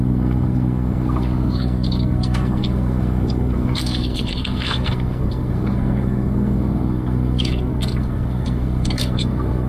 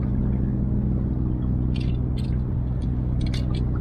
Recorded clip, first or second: second